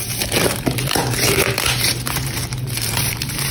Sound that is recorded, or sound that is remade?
remade